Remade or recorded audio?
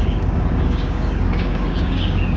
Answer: remade